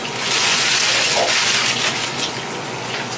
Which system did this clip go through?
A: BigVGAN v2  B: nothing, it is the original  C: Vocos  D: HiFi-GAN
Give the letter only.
C